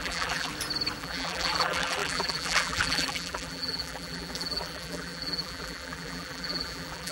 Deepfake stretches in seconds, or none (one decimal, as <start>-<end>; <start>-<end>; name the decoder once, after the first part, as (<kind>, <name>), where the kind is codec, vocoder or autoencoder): 0.0-0.5 (vocoder, BigVGAN v2); 1.0-7.1